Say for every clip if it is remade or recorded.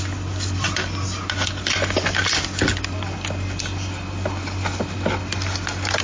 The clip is recorded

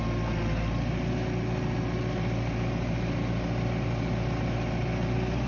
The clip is recorded